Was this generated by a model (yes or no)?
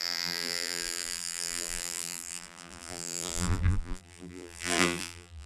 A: yes